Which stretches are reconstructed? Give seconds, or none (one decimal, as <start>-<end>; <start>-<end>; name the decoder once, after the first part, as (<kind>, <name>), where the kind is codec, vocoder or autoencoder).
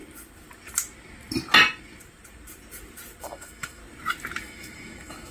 3.2-3.8 (autoencoder, DAC-VAE); 4.4-5.3